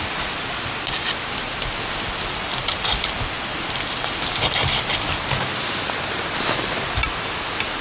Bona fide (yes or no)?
yes